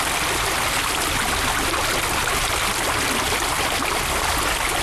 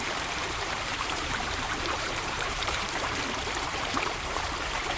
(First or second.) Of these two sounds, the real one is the first